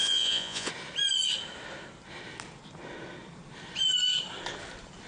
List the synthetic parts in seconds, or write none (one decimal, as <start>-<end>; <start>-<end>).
0.0-0.7